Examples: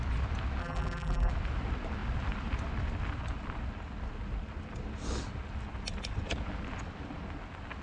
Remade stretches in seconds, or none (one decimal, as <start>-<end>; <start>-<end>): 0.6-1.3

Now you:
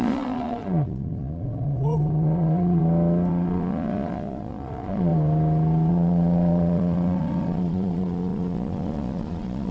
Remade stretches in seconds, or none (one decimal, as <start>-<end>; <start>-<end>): 0.0-2.8; 3.3-5.1; 5.9-9.7

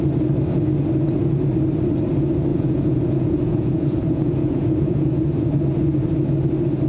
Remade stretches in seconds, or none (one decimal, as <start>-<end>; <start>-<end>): 2.5-5.4

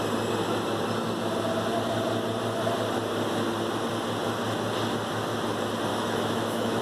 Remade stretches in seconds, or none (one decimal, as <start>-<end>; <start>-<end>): 5.9-6.8